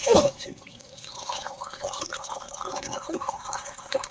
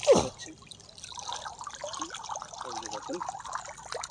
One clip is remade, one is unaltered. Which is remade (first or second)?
first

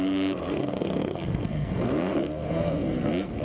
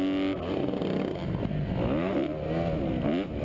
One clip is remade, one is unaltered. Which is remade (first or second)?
first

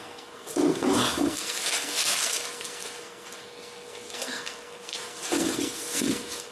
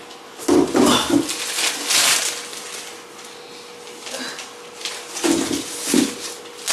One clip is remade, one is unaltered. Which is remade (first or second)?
first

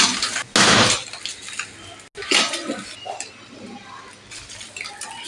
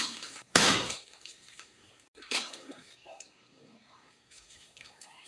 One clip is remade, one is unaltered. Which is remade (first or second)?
second